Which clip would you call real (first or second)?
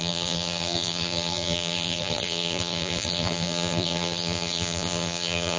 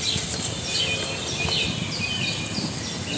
second